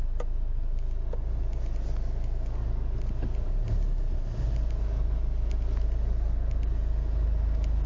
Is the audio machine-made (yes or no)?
no